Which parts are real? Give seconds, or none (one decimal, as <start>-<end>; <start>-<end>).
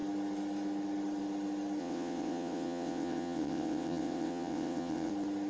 0.0-1.8; 5.1-5.5